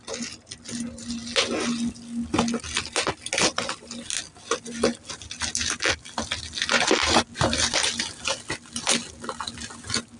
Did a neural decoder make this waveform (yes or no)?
no